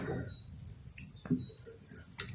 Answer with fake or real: real